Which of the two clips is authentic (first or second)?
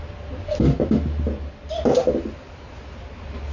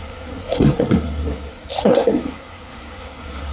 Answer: first